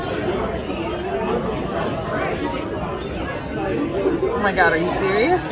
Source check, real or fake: real